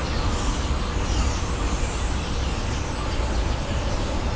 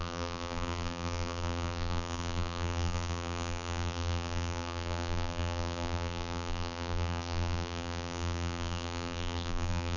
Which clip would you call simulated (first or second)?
second